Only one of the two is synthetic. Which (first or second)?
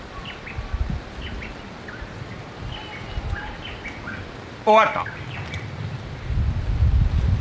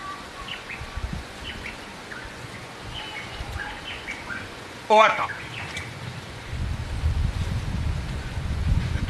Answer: second